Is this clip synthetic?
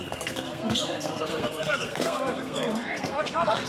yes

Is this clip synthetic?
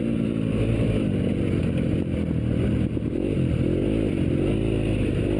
no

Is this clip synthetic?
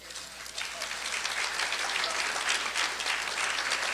no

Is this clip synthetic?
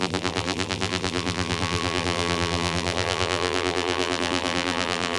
yes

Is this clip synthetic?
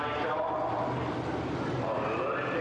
no